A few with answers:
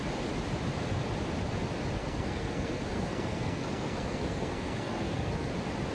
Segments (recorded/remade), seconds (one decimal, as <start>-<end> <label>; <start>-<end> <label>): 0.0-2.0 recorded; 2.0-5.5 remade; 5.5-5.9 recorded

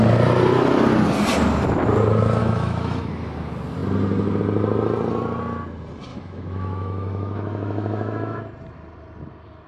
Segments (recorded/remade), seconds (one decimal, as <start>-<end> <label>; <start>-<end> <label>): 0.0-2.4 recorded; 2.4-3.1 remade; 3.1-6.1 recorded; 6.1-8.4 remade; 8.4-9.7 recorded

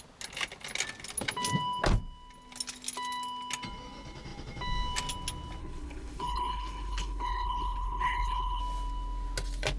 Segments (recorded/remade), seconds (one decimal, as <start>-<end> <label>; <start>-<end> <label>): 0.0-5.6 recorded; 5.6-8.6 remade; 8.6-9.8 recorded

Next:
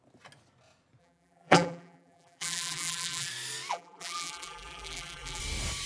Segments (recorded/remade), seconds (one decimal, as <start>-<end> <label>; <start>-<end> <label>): 0.0-1.0 recorded; 1.0-3.3 remade; 3.3-3.7 recorded; 3.7-5.4 remade; 5.4-5.9 recorded